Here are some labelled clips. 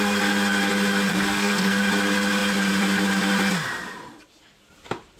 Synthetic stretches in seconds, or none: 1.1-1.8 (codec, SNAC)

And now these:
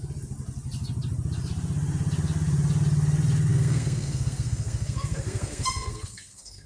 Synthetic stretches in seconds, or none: 3.5-6.7 (codec, SNAC)

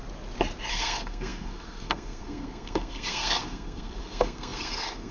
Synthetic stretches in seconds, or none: 0.7-5.1 (codec, SNAC)

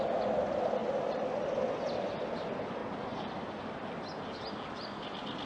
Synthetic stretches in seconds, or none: none

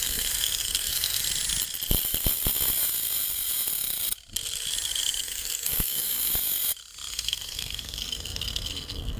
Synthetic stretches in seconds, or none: 0.0-1.2 (codec, SNAC); 5.2-6.3; 7.1-9.2